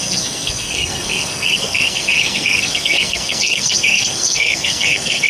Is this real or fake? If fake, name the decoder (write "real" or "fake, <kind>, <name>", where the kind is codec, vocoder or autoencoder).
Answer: fake, codec, SNAC